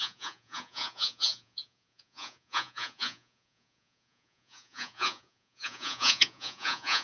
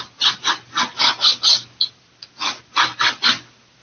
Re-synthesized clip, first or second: first